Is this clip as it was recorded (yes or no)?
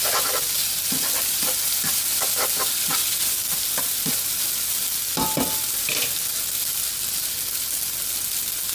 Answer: yes